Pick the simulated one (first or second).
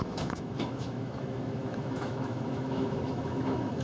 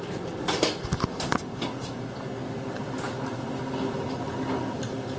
first